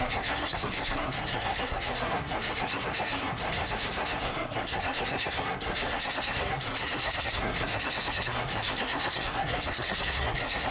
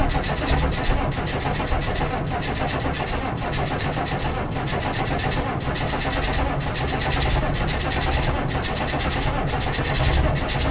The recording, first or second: second